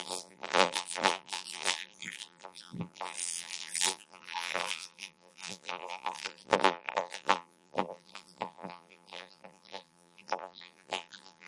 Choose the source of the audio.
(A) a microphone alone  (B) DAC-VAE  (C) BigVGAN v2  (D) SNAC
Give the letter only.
C